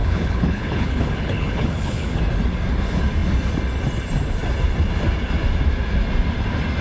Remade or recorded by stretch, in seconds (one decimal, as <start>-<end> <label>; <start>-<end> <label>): 0.0-2.2 remade; 2.2-6.8 recorded